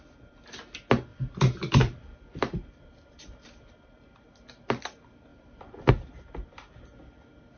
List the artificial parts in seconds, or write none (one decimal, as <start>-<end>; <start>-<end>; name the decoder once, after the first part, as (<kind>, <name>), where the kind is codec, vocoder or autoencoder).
1.1-3.7 (vocoder, BigVGAN v2); 5.3-5.9